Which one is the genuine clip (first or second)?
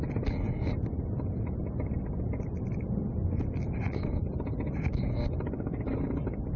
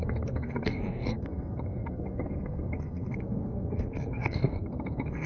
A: first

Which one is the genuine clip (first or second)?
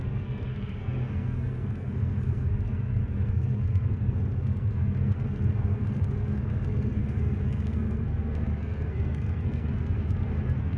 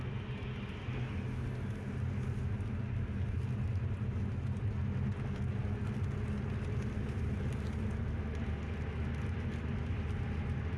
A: second